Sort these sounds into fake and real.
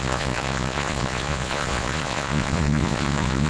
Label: fake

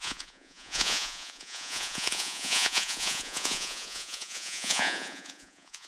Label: fake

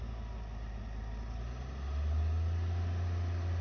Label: real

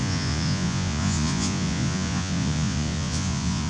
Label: fake